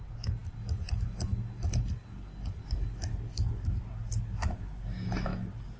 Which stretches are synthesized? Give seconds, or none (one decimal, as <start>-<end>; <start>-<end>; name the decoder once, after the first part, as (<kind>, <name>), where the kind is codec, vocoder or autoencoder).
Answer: none